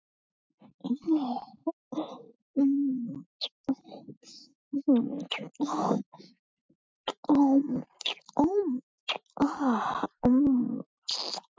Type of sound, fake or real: real